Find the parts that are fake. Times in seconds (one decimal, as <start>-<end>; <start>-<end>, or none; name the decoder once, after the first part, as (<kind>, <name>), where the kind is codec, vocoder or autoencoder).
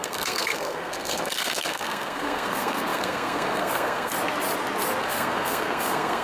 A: 0.0-4.1 (codec, SNAC); 5.0-6.2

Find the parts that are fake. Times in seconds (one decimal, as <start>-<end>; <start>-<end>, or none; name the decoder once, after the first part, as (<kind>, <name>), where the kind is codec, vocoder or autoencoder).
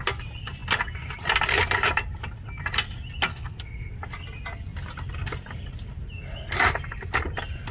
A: 3.3-3.9 (codec, SNAC)